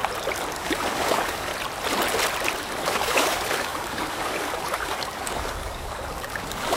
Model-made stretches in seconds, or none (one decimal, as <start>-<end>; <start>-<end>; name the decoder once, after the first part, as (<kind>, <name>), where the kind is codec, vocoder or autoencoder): 0.5-1.5 (codec, DAC); 2.8-6.8